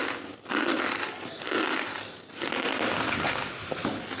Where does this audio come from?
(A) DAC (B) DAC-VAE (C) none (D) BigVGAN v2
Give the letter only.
C